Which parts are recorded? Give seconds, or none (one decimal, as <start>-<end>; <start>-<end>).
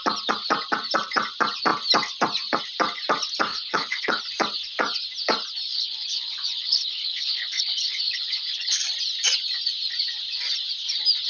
0.0-3.5; 4.2-5.7; 8.8-11.3